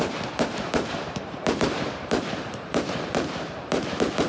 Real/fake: fake